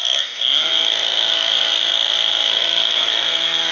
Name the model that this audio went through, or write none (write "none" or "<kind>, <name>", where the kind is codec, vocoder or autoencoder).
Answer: codec, SNAC